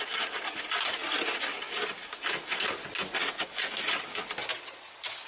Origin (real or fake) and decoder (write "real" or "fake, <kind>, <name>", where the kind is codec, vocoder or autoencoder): real